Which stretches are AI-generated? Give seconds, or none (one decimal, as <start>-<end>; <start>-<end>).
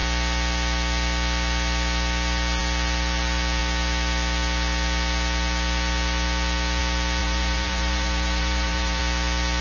7.2-9.0